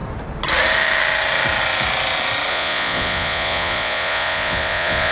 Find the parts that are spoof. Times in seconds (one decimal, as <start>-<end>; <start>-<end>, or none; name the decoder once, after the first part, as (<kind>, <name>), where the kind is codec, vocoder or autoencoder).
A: 2.5-5.1 (vocoder, Vocos)